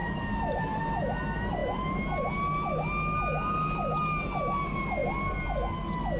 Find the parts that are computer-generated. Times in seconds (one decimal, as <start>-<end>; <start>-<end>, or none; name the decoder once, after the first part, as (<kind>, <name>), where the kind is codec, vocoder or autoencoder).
0.0-0.8 (vocoder, BigVGAN v2)